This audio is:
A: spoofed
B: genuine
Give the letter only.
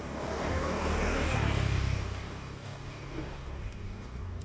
A